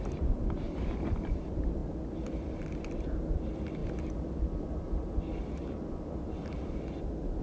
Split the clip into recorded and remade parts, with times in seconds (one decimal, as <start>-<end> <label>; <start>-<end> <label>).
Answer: 0.0-7.4 recorded